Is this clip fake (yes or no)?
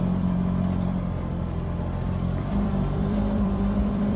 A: yes